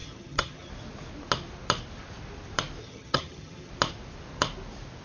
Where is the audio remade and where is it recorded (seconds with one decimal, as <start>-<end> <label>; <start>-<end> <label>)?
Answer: 0.0-0.7 remade; 0.7-2.8 recorded; 2.8-3.7 remade; 3.7-5.0 recorded

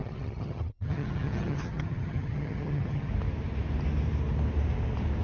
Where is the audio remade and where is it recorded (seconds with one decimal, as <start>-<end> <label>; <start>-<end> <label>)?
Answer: 0.0-3.1 remade; 3.1-5.2 recorded

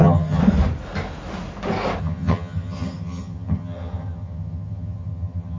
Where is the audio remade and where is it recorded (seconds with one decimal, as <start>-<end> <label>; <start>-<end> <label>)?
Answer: 0.0-0.4 remade; 0.4-2.0 recorded; 2.0-5.6 remade

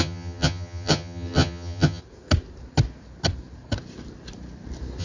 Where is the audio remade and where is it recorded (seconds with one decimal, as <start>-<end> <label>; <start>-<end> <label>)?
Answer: 0.0-2.0 remade; 2.0-5.0 recorded

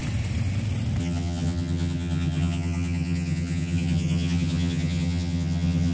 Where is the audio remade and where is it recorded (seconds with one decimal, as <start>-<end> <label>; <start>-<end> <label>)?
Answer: 0.0-1.0 recorded; 1.0-5.9 remade